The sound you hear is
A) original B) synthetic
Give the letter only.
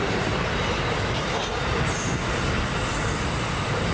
A